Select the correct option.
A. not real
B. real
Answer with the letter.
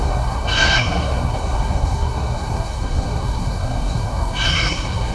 A